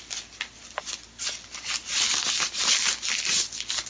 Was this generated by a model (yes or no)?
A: no